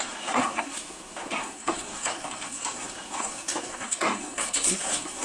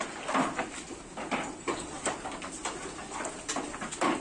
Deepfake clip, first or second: first